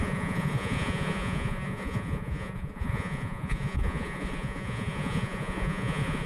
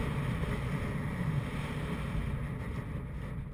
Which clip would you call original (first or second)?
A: second